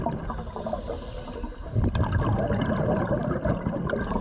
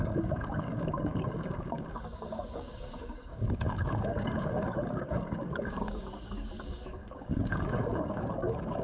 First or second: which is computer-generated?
second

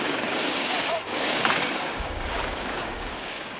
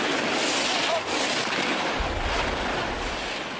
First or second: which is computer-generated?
first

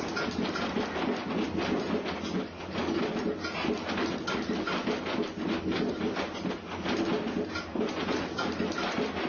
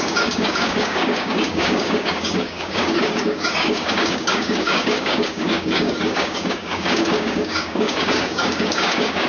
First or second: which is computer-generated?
second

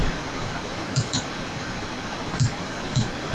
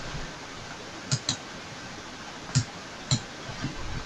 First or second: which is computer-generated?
first